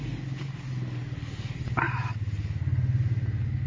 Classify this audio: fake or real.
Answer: real